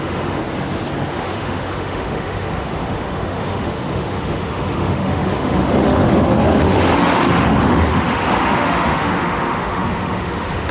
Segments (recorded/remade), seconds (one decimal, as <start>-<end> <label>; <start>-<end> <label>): 0.0-0.4 remade; 0.4-1.1 recorded; 1.1-10.7 remade